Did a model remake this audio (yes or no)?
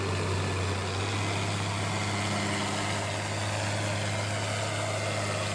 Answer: no